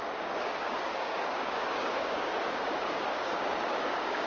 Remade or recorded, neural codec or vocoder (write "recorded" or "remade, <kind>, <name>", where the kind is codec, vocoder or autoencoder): remade, codec, DAC